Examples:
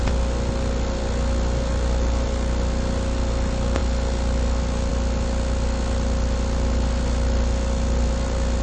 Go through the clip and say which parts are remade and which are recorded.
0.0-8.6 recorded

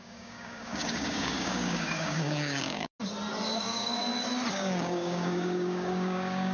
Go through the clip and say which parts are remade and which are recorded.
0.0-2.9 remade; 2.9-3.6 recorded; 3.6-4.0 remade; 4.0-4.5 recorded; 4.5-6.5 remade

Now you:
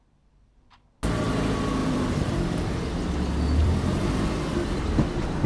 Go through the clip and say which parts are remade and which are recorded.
0.0-1.8 recorded; 1.8-2.9 remade; 2.9-3.6 recorded; 3.6-4.8 remade; 4.8-5.5 recorded

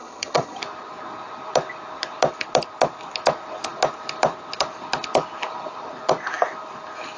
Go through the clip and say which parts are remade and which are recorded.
0.0-0.6 remade; 0.6-7.2 recorded

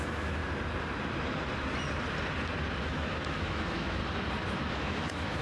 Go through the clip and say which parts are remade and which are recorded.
0.0-0.4 remade; 0.4-2.8 recorded; 2.8-4.0 remade; 4.0-4.7 recorded; 4.7-5.4 remade